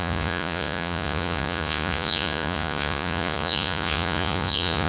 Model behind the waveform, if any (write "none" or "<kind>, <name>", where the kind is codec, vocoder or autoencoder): vocoder, Vocos